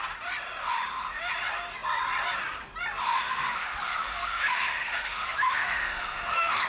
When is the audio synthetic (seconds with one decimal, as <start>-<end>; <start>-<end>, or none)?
0.6-1.3; 3.0-6.7